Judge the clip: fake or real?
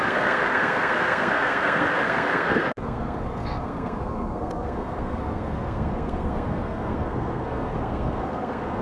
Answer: fake